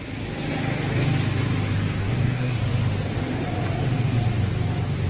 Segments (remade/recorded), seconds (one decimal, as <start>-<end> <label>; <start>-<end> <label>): 0.0-2.0 recorded; 2.0-2.6 remade; 2.6-5.1 recorded